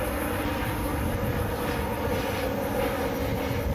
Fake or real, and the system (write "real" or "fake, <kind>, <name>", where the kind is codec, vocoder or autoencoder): real